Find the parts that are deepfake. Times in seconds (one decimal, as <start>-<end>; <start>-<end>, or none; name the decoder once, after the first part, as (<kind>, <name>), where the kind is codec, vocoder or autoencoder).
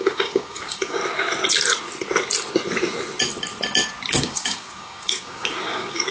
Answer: 0.0-1.0 (codec, DAC); 4.1-6.1